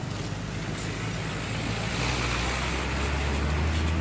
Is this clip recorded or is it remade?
recorded